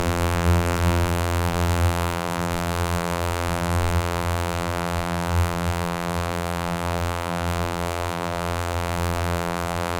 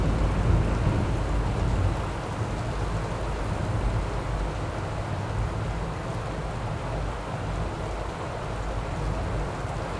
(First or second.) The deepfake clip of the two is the first